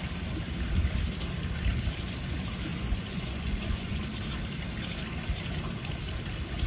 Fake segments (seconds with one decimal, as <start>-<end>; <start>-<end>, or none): 2.7-4.0